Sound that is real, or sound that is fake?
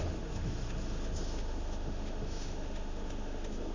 fake